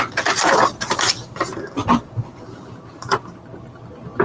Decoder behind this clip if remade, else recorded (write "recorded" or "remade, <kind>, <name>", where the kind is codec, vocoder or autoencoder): recorded